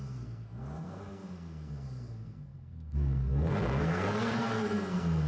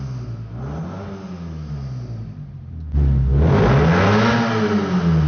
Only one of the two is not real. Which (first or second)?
first